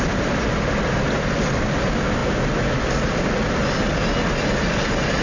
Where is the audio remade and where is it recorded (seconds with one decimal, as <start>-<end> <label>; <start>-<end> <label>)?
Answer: 0.0-5.2 recorded